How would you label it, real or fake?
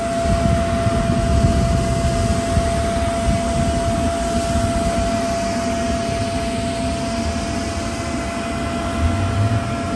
real